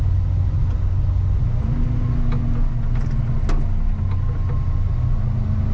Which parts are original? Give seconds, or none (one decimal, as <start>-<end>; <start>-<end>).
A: 0.0-5.7